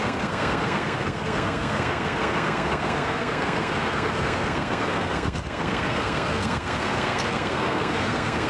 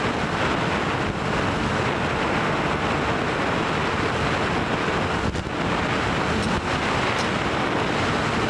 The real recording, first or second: second